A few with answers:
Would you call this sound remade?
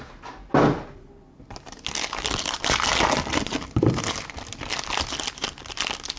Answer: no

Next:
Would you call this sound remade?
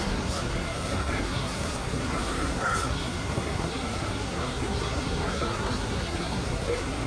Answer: yes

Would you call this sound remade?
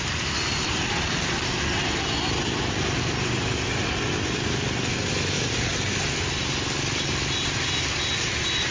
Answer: no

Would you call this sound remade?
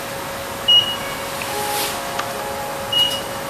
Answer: no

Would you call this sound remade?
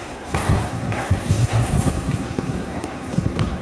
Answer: yes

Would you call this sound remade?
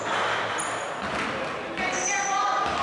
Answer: no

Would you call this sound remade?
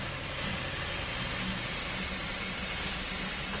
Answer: no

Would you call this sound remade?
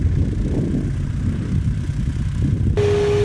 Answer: no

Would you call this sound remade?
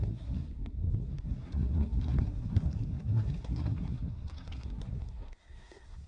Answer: yes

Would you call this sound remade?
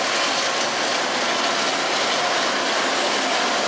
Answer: no